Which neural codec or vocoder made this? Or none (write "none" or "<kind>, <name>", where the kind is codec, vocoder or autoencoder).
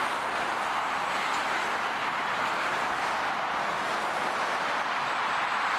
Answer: none